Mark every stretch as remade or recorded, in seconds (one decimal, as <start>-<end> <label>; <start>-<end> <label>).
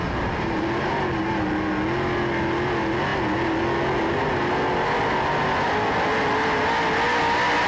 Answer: 0.0-7.7 recorded